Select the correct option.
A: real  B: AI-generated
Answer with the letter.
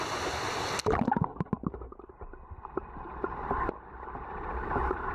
A